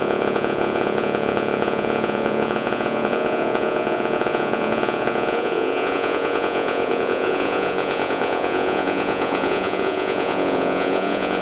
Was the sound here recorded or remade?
remade